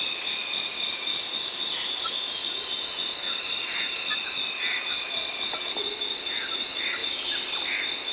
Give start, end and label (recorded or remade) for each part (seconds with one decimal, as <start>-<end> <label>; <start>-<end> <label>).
0.0-8.1 recorded

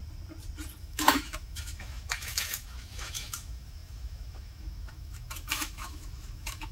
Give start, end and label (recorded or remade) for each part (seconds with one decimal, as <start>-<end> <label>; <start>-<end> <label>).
0.0-0.8 recorded; 0.8-6.7 remade

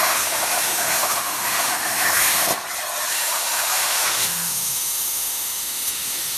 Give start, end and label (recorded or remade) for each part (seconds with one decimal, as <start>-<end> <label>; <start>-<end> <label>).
0.0-2.5 remade; 2.5-3.1 recorded; 3.1-6.4 remade

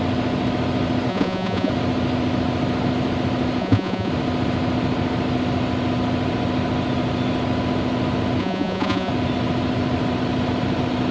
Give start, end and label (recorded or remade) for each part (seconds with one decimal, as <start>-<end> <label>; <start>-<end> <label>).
0.0-1.1 recorded; 1.1-1.7 remade; 1.7-3.6 recorded; 3.6-4.1 remade; 4.1-8.4 recorded; 8.4-9.1 remade; 9.1-11.1 recorded

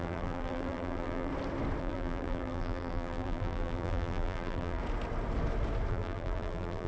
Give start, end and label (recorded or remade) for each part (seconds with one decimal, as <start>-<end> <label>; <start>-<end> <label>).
0.0-1.3 remade; 1.3-1.8 recorded; 1.8-4.8 remade; 4.8-5.9 recorded; 5.9-6.9 remade

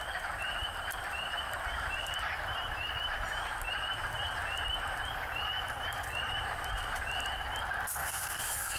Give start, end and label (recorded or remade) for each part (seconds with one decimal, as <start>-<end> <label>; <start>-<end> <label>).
0.0-8.0 recorded; 8.0-8.8 remade